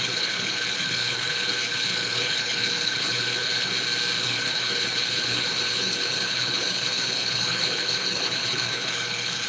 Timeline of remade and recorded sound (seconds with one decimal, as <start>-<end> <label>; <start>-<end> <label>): 0.0-3.7 remade; 3.7-4.2 recorded; 4.2-9.5 remade